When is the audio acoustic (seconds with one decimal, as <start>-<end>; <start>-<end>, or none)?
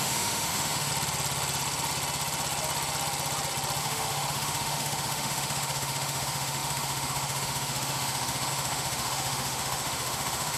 0.9-3.8